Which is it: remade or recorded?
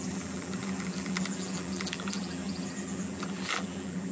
remade